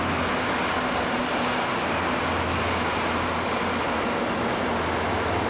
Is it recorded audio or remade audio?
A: recorded